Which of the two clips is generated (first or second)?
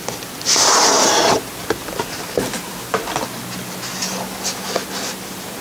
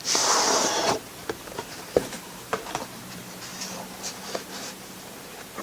second